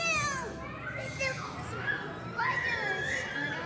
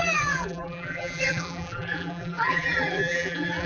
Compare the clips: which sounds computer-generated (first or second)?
second